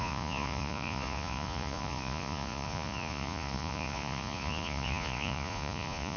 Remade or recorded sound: remade